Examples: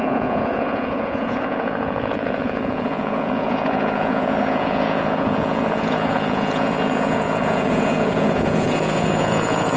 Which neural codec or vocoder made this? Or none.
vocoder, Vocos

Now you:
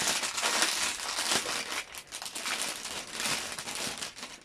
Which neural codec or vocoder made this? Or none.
none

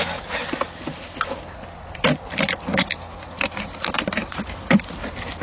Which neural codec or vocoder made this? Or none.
none